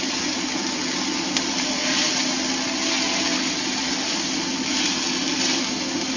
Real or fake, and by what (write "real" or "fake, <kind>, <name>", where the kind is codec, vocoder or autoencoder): real